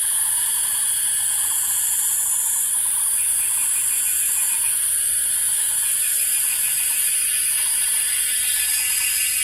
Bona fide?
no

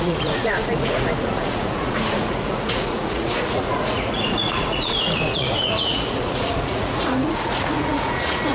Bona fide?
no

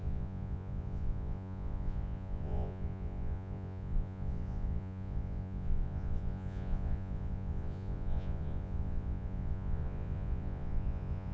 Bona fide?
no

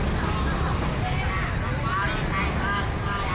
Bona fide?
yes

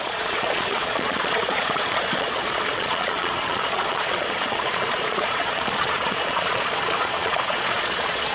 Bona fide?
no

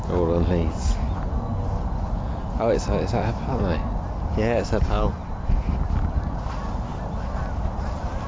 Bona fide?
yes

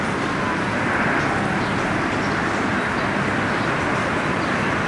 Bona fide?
yes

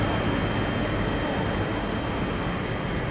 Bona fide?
yes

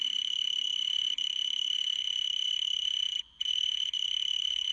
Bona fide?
no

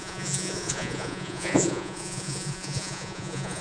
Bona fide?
no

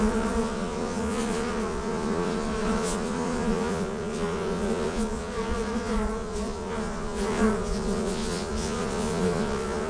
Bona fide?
no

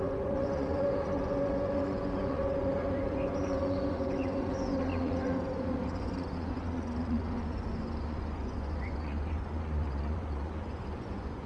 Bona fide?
no